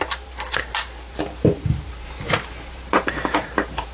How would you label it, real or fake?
fake